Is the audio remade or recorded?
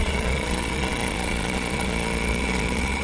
remade